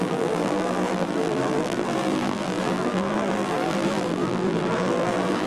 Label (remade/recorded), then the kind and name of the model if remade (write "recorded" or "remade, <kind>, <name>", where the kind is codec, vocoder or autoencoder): remade, vocoder, BigVGAN v2